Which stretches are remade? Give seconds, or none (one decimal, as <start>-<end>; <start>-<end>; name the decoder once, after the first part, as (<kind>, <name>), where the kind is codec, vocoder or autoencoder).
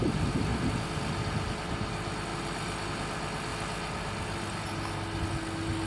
none